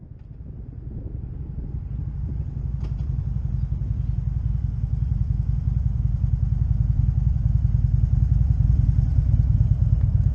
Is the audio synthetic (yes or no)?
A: no